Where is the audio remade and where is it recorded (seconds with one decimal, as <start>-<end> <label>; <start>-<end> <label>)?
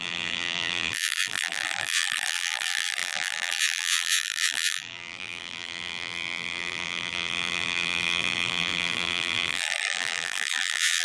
0.0-11.0 remade